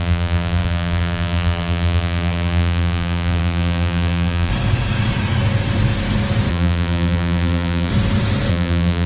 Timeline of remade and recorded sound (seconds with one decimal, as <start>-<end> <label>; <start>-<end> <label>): 0.0-4.5 remade; 4.5-6.5 recorded; 6.5-7.9 remade; 7.9-8.5 recorded; 8.5-9.1 remade